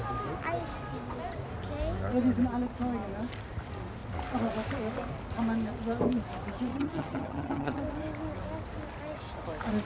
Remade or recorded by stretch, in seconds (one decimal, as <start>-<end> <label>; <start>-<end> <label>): 0.0-6.7 recorded; 6.7-7.8 remade; 7.8-9.8 recorded